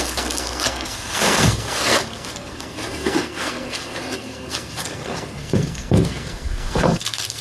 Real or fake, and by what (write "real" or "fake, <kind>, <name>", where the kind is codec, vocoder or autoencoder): fake, codec, SNAC